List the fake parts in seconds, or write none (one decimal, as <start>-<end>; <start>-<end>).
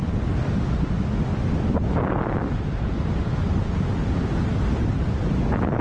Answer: none